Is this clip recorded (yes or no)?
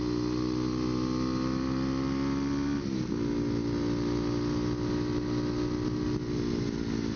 yes